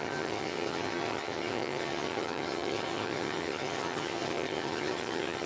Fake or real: fake